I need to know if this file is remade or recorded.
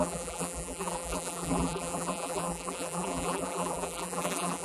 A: remade